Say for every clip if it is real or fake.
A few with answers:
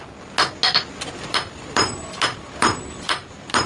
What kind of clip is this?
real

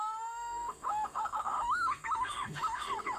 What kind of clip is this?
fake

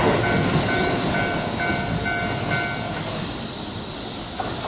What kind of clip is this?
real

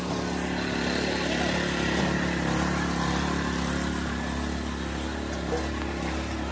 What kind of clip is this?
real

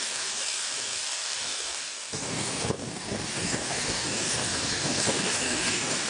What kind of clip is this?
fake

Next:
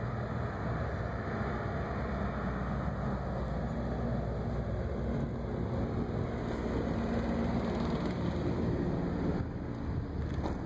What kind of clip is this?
real